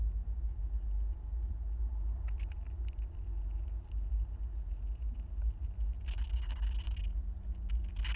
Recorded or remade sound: recorded